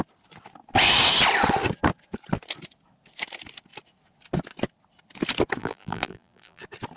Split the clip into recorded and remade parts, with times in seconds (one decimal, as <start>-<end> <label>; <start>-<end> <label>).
0.0-5.6 recorded; 5.6-6.6 remade; 6.6-7.0 recorded